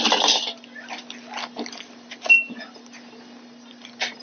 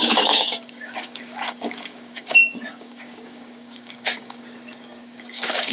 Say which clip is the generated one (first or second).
second